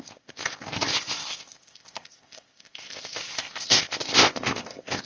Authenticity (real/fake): fake